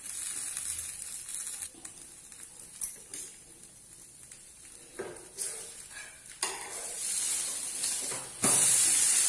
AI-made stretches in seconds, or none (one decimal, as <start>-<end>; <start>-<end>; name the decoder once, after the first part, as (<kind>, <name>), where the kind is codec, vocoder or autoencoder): none